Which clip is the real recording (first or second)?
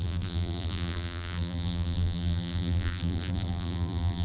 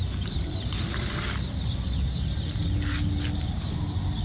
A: second